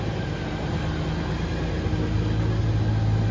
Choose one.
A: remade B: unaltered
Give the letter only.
B